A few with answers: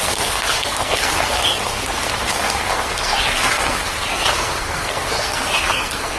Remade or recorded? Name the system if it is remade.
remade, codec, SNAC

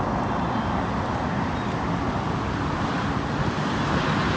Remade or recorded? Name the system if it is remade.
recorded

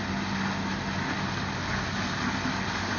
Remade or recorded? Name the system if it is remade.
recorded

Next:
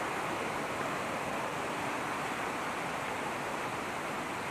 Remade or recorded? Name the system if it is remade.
recorded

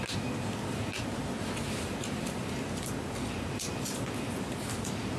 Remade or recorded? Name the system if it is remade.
recorded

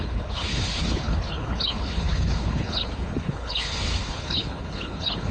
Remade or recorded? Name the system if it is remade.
remade, codec, HILCodec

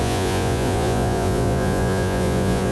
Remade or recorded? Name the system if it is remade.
remade, vocoder, Vocos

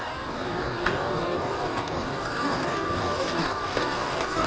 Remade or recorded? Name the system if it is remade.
remade, codec, DAC